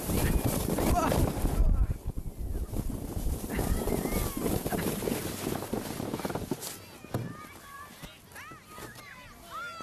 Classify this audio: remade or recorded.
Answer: recorded